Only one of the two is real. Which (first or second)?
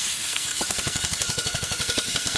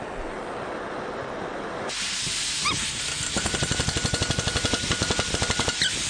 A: second